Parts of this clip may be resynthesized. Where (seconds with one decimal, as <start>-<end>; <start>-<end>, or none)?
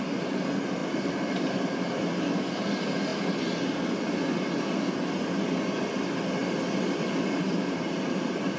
0.8-2.1; 6.4-8.6